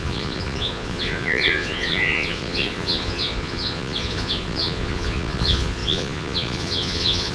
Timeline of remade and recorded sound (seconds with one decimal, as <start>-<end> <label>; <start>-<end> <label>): 0.0-7.3 remade